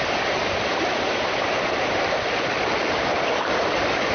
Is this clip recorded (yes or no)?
yes